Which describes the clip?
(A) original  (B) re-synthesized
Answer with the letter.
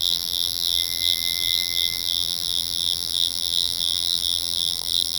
B